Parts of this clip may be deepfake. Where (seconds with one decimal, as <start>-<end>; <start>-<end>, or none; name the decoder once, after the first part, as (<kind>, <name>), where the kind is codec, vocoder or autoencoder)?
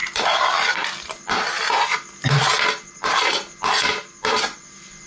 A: none